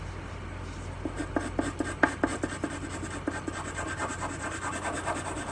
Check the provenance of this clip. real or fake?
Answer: real